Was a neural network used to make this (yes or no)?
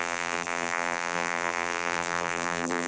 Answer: yes